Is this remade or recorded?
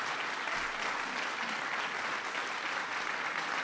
recorded